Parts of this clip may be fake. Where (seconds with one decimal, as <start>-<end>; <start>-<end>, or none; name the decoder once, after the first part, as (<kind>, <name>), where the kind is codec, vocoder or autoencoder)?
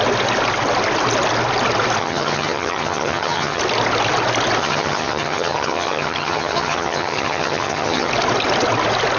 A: 2.0-3.6 (vocoder, HiFi-GAN); 4.6-8.1